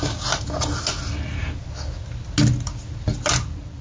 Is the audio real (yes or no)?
yes